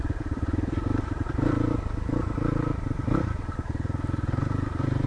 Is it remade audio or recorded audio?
remade